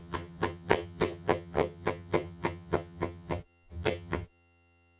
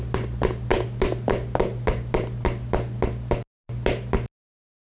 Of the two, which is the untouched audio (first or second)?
second